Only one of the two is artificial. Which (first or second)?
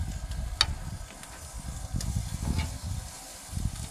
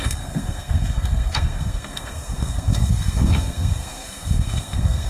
second